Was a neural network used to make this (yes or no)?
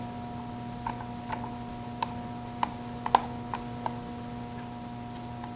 no